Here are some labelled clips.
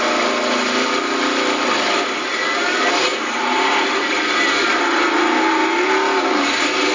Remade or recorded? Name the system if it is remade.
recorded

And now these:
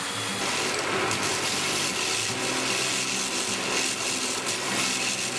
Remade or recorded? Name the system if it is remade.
recorded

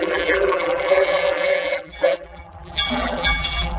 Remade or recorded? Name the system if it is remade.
remade, vocoder, BigVGAN v2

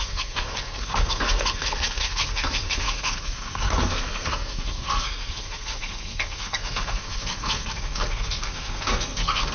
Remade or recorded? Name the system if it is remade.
remade, codec, SNAC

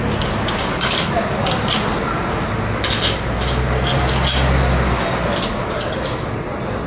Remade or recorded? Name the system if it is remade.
recorded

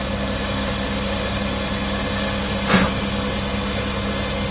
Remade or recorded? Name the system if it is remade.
recorded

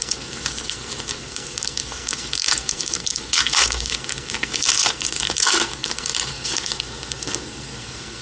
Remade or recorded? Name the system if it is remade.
remade, codec, SNAC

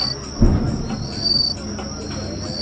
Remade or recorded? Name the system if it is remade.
recorded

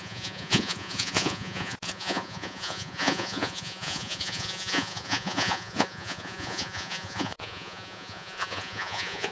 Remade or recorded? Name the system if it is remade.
remade, vocoder, Vocos